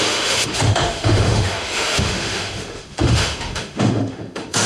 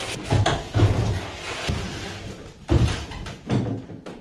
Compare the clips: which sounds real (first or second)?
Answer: second